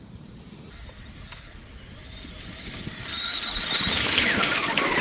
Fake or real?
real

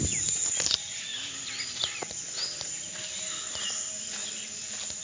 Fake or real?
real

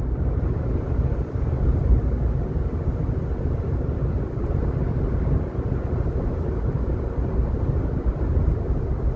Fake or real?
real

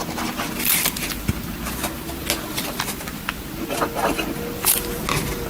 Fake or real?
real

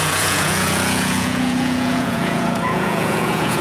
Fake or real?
fake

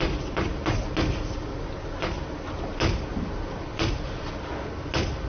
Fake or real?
real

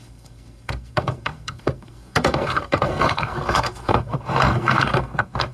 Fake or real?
fake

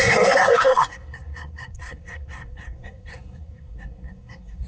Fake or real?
fake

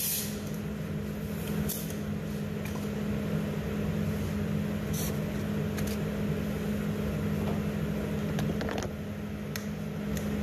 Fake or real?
real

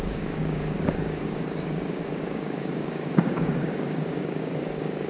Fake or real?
fake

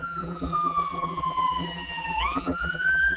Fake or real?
fake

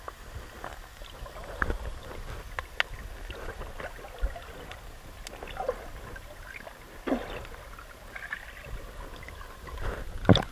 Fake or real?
real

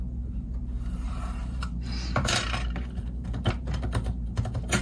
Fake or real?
fake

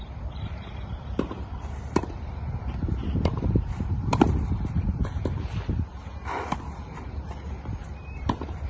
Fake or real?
fake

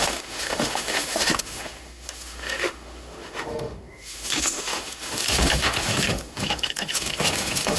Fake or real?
fake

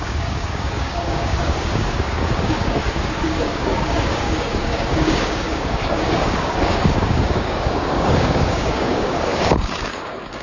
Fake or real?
fake